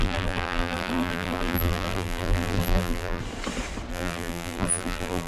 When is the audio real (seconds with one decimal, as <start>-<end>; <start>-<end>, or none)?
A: 3.2-3.9